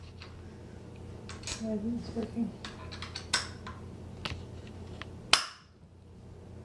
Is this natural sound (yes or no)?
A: yes